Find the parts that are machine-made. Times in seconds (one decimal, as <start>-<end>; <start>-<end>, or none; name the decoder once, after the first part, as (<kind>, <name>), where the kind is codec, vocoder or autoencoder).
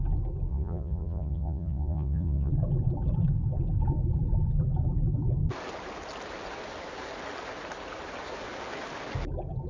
0.5-2.5 (vocoder, Vocos)